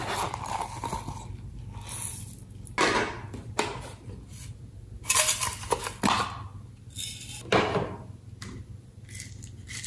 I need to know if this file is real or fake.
real